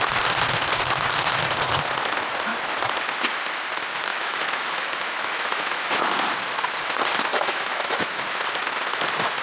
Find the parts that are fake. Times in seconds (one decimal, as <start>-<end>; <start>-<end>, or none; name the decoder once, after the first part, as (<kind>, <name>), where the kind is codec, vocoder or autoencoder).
4.1-5.9 (autoencoder, DAC-VAE); 7.3-8.2